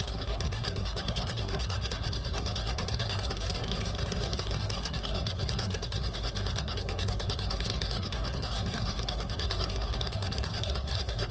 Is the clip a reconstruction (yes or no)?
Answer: yes